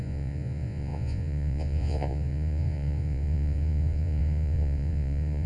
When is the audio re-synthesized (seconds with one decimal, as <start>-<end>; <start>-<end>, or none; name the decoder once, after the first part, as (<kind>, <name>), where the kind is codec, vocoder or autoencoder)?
0.0-5.5 (vocoder, Vocos)